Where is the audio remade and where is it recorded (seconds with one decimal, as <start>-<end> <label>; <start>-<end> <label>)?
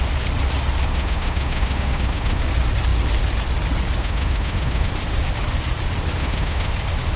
0.0-0.9 recorded; 0.9-2.4 remade; 2.4-4.0 recorded; 4.0-4.9 remade; 4.9-6.2 recorded; 6.2-6.7 remade; 6.7-7.2 recorded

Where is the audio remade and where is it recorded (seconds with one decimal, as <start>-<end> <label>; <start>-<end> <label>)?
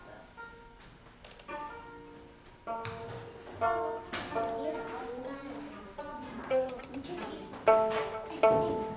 0.0-6.1 recorded; 6.1-6.9 remade; 6.9-9.0 recorded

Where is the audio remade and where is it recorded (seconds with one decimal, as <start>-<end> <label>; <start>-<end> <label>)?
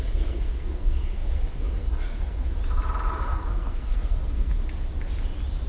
0.0-2.5 remade; 2.5-3.2 recorded; 3.2-4.6 remade; 4.6-5.7 recorded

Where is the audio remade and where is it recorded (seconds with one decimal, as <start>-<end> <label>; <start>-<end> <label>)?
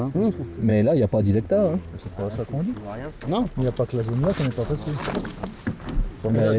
0.0-6.6 recorded